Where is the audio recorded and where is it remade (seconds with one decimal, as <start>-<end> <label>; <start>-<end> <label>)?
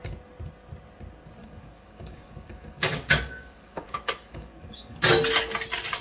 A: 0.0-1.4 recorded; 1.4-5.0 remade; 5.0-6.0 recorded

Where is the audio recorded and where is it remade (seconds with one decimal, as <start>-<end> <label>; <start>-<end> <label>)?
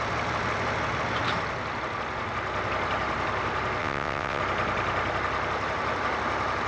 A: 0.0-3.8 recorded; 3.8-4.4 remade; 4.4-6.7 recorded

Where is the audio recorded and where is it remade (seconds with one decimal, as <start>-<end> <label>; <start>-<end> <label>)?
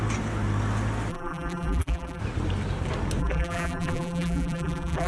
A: 0.0-1.1 recorded; 1.1-2.2 remade; 2.2-3.2 recorded; 3.2-5.1 remade